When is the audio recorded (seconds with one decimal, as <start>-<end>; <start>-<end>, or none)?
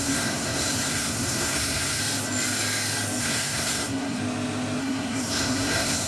2.0-3.2; 4.2-4.8